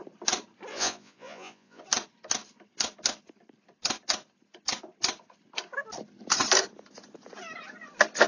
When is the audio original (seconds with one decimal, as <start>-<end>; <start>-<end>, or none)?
0.0-0.7; 1.8-8.3